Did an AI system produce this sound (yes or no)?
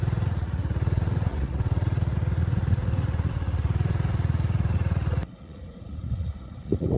yes